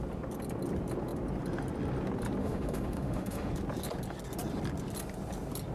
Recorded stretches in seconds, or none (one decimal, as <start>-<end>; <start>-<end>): 0.0-2.4; 3.5-5.7